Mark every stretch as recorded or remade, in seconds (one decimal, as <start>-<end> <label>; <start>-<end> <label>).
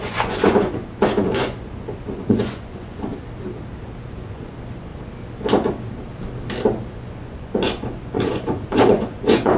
0.0-3.1 remade; 3.1-4.1 recorded; 4.1-4.9 remade; 4.9-6.9 recorded; 6.9-9.6 remade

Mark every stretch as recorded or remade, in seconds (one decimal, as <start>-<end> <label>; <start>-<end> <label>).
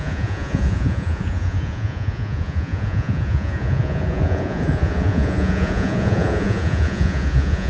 0.0-7.7 remade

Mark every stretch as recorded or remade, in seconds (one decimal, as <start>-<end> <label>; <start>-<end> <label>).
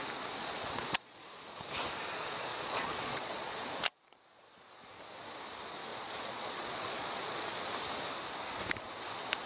0.0-0.4 recorded; 0.4-1.2 remade; 1.2-2.5 recorded; 2.5-3.5 remade; 3.5-5.9 recorded; 5.9-7.6 remade; 7.6-9.5 recorded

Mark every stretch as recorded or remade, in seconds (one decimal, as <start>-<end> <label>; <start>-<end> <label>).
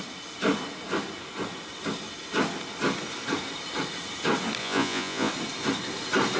0.0-4.6 recorded; 4.6-5.3 remade; 5.3-6.4 recorded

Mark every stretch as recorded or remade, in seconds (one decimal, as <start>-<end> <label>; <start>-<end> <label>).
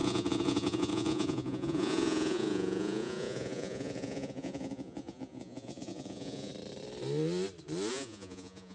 0.0-6.5 remade; 6.5-7.9 recorded; 7.9-8.7 remade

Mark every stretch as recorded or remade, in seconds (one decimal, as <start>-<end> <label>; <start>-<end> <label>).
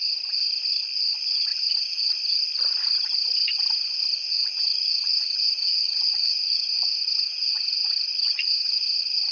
0.0-1.5 recorded; 1.5-2.1 remade; 2.1-4.2 recorded; 4.2-7.9 remade; 7.9-9.3 recorded